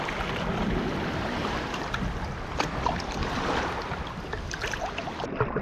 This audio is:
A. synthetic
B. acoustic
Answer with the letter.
B